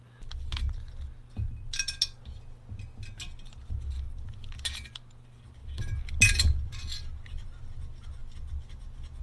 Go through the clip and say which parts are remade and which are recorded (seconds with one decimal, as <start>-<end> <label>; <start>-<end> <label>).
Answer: 0.0-9.2 recorded